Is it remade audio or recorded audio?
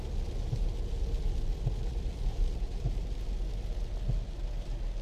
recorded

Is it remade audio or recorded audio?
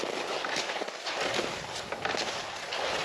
recorded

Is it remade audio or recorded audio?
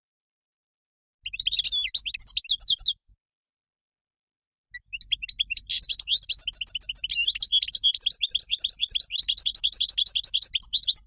recorded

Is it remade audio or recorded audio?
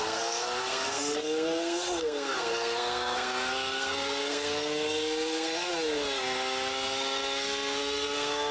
remade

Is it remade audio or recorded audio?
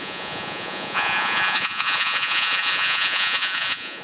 remade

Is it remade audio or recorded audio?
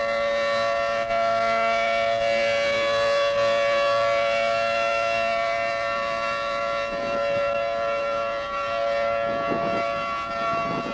recorded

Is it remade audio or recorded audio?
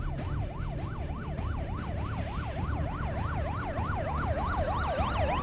remade